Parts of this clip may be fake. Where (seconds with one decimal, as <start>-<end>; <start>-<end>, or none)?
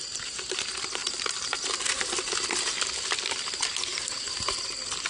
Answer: 1.0-2.1; 3.9-4.6